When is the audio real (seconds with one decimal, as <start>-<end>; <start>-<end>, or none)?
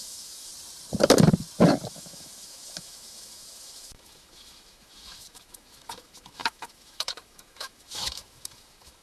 0.5-1.9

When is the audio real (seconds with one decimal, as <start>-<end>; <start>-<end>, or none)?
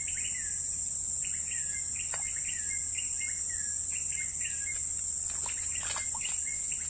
0.0-6.9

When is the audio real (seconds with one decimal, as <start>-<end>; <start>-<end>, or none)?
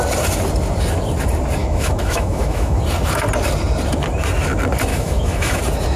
0.0-1.6; 2.8-4.9; 5.6-6.0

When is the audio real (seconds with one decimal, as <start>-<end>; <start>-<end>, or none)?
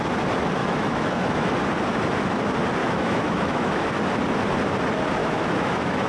0.0-0.6; 1.5-2.8; 3.7-5.2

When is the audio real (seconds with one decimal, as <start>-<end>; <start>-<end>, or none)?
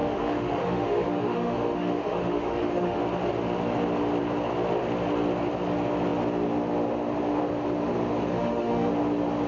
3.0-8.3; 8.9-9.5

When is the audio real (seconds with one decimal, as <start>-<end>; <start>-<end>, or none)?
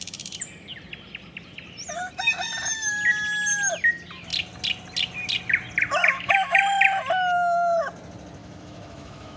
0.0-6.1; 6.6-8.4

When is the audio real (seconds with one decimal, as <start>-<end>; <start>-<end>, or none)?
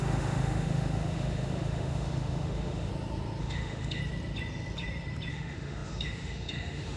2.9-3.4; 4.0-5.3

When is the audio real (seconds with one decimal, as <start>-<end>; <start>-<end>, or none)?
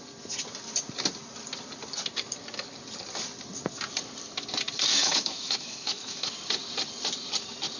0.0-4.9; 6.3-7.8